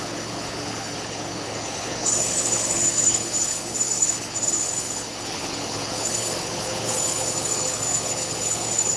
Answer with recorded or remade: remade